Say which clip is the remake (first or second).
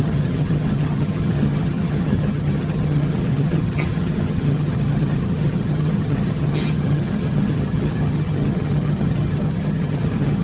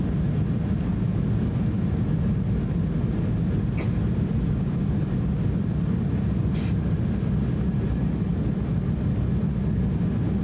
first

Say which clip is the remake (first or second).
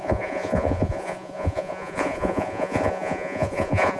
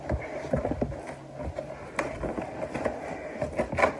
first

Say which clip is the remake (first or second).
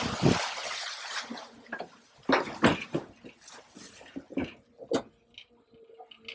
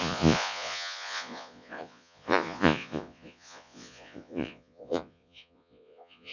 second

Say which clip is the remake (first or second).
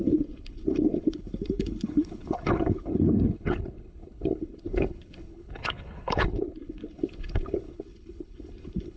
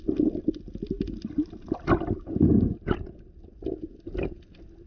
first